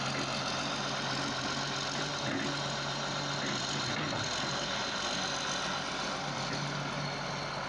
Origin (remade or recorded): recorded